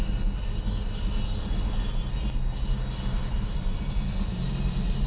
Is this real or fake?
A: real